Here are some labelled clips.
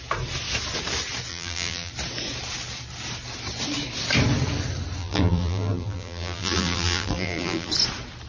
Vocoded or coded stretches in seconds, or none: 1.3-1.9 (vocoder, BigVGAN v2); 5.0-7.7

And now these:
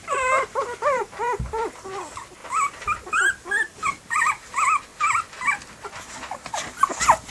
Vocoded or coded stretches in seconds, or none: 0.0-4.9 (vocoder, BigVGAN v2)

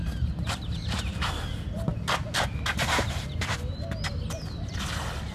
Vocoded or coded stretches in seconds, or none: 0.0-1.0 (vocoder, BigVGAN v2)

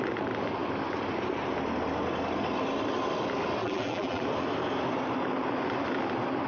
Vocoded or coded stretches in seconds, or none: 3.6-4.2 (vocoder, BigVGAN v2)

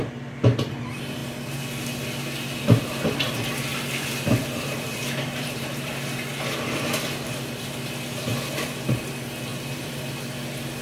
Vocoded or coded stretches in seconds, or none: 3.7-5.9 (vocoder, BigVGAN v2); 9.5-10.1

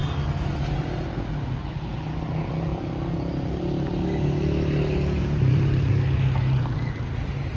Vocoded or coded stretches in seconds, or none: 5.2-5.9 (vocoder, BigVGAN v2)

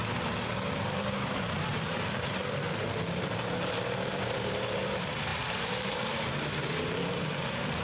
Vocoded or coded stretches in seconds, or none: 1.0-2.4 (vocoder, BigVGAN v2); 4.2-7.8